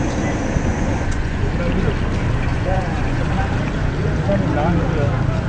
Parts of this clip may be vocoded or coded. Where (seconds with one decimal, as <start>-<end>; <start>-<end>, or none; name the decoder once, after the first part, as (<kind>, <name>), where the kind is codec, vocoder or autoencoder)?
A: 0.7-1.5 (vocoder, Vocos); 2.5-3.3